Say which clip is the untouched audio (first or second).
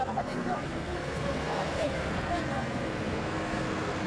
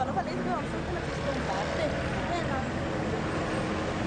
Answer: second